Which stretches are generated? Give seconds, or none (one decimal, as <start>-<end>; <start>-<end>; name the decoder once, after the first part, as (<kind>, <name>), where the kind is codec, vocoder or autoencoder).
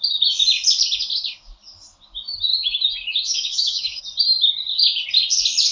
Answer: 2.5-4.0 (autoencoder, DAC-VAE)